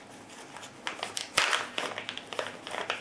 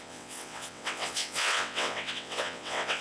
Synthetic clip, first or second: second